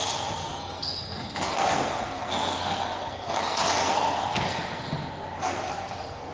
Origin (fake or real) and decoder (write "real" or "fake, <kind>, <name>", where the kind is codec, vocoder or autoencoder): fake, codec, SNAC